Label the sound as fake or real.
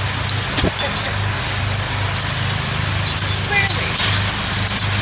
real